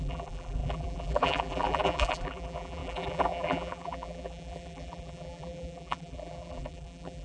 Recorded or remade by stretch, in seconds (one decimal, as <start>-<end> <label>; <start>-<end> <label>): 0.0-7.2 remade